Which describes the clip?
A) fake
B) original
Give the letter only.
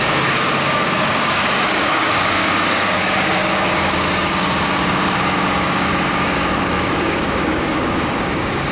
A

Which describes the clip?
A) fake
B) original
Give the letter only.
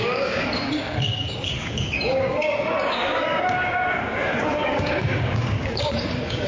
A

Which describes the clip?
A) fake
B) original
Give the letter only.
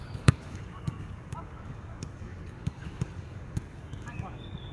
A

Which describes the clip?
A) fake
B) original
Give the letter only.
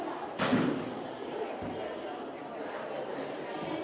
B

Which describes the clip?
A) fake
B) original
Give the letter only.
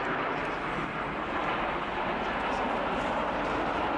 B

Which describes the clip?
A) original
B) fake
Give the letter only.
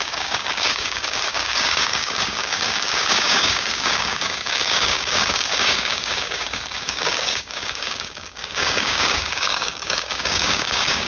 B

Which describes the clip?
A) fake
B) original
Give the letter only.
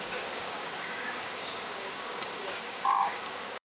A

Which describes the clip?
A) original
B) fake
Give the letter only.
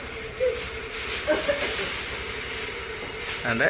A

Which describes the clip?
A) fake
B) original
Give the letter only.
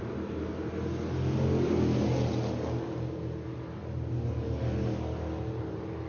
B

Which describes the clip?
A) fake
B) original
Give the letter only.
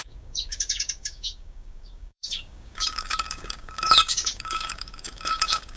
A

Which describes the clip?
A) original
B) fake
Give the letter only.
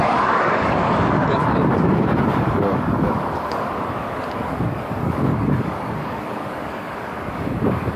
B